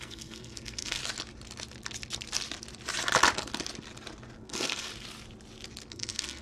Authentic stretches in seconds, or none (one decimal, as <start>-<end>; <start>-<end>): 1.0-4.4; 4.9-5.9